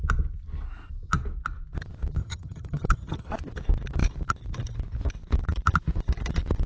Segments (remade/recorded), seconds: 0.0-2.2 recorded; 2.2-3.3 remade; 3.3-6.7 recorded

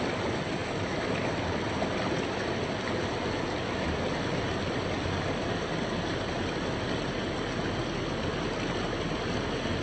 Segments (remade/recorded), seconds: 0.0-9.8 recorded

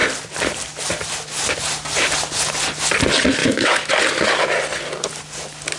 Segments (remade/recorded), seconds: 0.0-3.4 recorded; 3.4-3.9 remade; 3.9-5.8 recorded

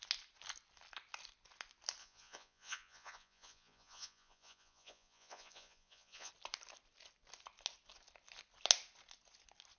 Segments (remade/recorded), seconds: 0.0-2.0 recorded; 2.0-6.3 remade; 6.3-9.8 recorded

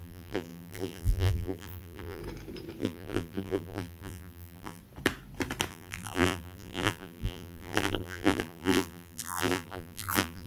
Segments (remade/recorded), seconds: 0.0-2.2 remade; 2.2-2.8 recorded; 2.8-4.8 remade; 4.8-5.7 recorded; 5.7-10.5 remade